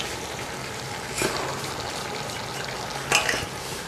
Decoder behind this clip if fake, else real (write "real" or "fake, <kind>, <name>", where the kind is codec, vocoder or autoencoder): real